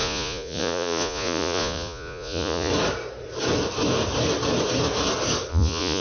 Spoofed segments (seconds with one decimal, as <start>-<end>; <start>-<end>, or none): 0.0-2.7; 5.5-6.0